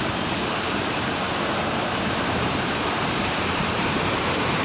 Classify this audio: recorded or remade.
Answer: remade